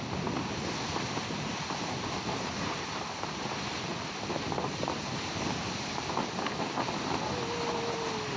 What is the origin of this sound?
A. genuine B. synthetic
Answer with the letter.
A